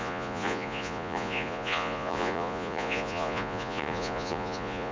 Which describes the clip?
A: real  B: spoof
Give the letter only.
B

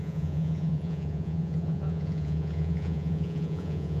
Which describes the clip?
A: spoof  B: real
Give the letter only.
A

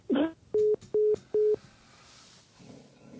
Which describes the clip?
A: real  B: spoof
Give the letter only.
A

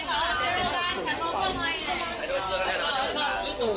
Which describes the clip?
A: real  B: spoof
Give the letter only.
A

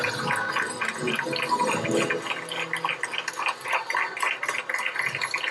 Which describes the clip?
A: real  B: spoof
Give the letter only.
A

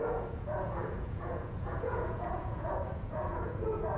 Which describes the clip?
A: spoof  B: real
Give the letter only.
A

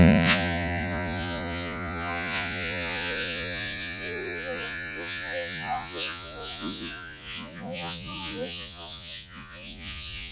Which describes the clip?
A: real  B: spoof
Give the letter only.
B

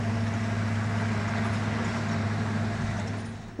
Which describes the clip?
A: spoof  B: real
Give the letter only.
B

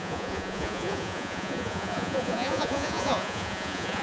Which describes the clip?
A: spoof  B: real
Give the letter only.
A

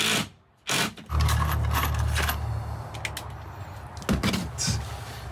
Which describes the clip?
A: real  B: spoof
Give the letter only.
A